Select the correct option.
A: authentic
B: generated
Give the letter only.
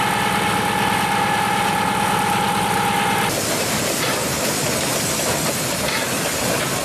A